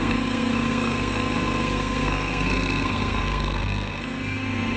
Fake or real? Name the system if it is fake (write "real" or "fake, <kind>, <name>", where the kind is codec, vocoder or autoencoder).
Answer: fake, codec, SNAC